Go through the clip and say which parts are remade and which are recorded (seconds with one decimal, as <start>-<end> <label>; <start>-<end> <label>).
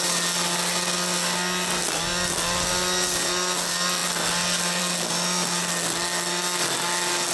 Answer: 0.0-7.3 recorded